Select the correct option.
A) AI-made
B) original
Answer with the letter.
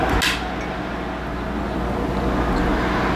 B